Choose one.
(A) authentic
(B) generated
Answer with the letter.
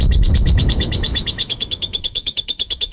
B